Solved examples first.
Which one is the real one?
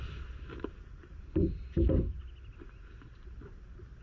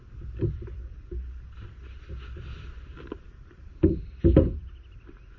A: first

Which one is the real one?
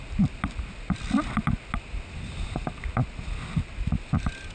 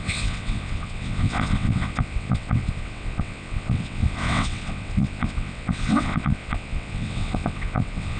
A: first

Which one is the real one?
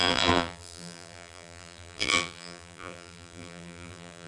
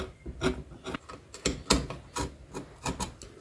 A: second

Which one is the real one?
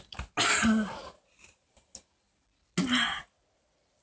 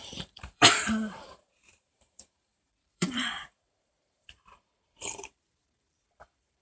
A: first